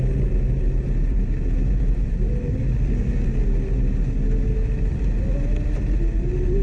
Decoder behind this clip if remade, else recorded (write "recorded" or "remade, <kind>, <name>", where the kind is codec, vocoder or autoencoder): recorded